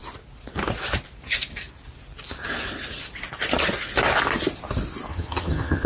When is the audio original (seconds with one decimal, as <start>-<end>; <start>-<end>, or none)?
0.0-5.1